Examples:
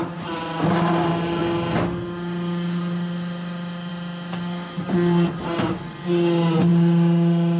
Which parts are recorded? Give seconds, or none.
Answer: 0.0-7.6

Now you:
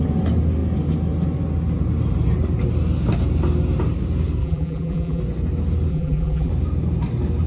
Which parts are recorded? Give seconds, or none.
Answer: 0.0-4.4; 5.2-5.9; 6.5-7.5

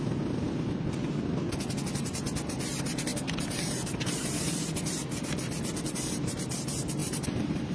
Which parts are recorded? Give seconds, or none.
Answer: 0.0-3.1; 4.5-7.0

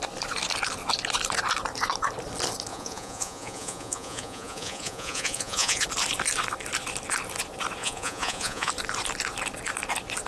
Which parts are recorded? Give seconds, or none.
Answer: 0.0-2.7; 5.8-7.8; 8.7-10.3

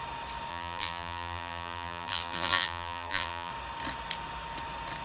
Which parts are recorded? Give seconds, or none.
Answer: 0.0-0.5; 3.5-5.0

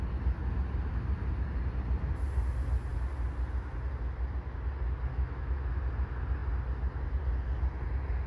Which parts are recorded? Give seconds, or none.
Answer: 0.0-5.1; 5.8-8.3

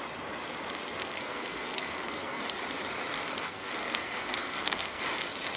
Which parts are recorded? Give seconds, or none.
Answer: 0.0-1.0; 2.4-3.3; 5.0-5.6